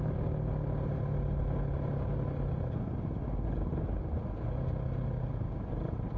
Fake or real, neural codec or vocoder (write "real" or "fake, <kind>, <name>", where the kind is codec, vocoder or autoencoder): real